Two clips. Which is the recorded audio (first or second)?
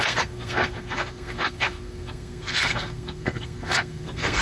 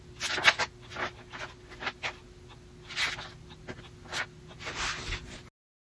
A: second